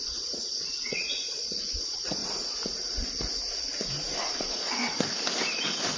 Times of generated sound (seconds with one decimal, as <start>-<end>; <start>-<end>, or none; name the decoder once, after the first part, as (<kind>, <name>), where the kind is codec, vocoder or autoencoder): 0.0-2.2 (vocoder, Vocos); 4.2-4.8